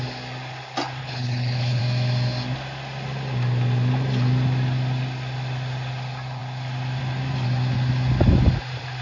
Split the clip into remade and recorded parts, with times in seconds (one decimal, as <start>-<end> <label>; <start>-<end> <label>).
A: 0.0-1.0 recorded; 1.0-1.8 remade; 1.8-9.0 recorded